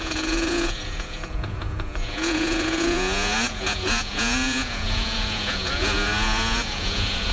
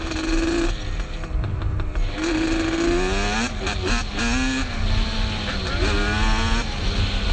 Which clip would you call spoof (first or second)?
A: first